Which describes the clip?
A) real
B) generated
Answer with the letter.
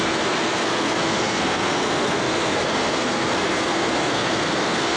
B